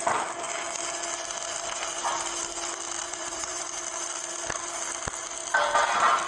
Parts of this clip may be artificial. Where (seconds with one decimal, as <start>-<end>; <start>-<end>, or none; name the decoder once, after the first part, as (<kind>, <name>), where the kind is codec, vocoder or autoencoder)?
3.0-3.8 (vocoder, Vocos)

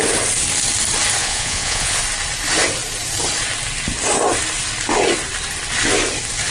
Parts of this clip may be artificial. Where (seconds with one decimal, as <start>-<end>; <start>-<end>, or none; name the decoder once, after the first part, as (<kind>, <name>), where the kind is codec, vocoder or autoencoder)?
1.2-2.0 (vocoder, Vocos)

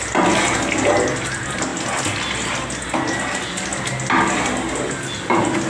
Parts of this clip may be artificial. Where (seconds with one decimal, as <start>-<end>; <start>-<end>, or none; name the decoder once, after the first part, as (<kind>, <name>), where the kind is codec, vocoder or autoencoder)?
none

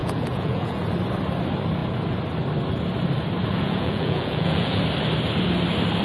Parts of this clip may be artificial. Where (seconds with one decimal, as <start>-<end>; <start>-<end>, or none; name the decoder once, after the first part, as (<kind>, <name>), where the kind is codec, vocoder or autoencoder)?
0.0-0.9 (vocoder, Vocos); 3.5-4.8

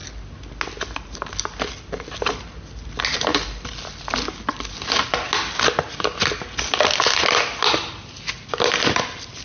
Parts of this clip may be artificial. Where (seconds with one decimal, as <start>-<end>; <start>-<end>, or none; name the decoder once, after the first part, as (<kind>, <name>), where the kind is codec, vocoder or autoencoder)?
none

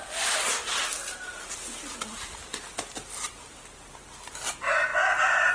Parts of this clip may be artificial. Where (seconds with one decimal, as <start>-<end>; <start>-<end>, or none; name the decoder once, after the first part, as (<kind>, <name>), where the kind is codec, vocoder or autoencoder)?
none